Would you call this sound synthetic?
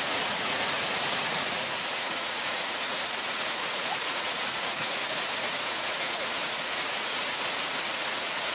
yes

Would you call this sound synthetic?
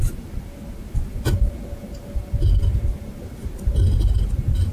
no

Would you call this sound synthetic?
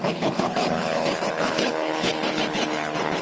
yes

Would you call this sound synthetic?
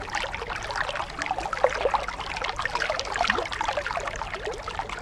no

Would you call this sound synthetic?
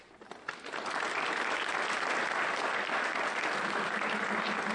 no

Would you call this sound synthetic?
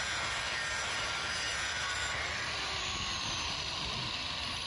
no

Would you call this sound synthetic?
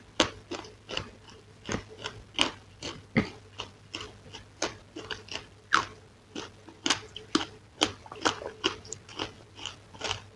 no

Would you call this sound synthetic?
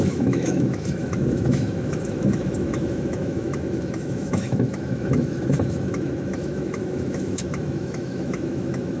yes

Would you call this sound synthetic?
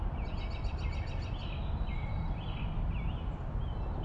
no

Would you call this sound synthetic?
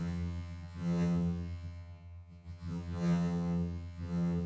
yes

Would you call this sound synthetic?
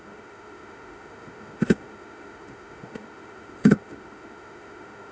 yes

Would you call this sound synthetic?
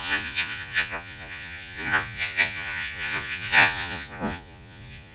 yes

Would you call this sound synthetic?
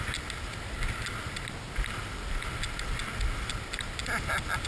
no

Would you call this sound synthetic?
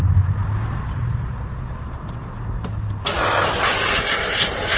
no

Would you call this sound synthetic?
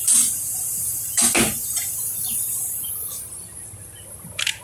yes